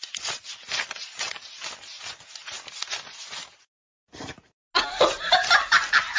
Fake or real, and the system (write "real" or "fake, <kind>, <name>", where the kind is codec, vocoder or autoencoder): real